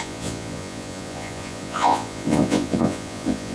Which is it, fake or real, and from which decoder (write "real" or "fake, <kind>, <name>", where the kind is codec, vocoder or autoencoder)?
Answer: fake, vocoder, Vocos